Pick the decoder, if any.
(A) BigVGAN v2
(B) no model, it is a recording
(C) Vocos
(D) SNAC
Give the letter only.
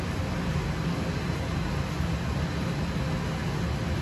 B